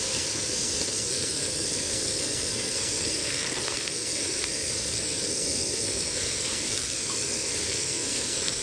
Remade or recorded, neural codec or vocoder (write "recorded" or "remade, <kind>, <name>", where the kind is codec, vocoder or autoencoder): remade, codec, SNAC